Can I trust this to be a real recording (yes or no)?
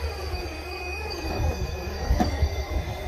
no